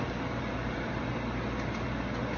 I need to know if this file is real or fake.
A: real